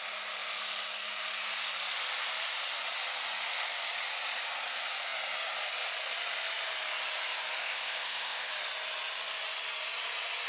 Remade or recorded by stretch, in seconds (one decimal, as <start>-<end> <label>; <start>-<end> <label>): 0.0-7.6 recorded; 7.6-8.5 remade; 8.5-10.5 recorded